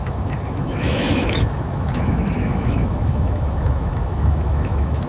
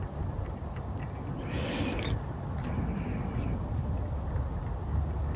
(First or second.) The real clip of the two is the second